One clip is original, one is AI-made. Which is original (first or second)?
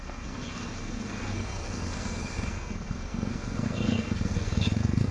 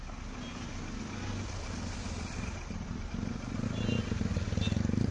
second